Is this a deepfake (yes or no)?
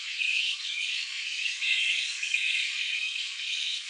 yes